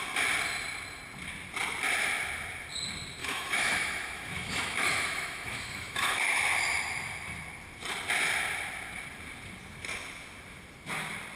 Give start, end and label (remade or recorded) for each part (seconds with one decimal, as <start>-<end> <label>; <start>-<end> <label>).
0.0-3.2 recorded; 3.2-6.4 remade; 6.4-11.4 recorded